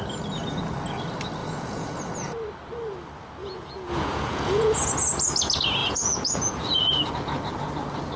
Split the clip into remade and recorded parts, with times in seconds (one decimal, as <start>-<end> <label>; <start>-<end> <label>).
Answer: 0.0-1.4 recorded; 1.4-2.0 remade; 2.0-3.4 recorded; 3.4-4.9 remade; 4.9-5.8 recorded; 5.8-7.1 remade; 7.1-8.2 recorded